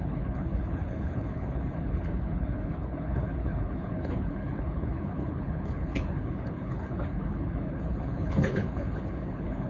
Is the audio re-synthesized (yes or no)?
yes